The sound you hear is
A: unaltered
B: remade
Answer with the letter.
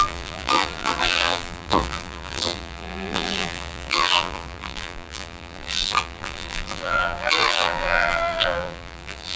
B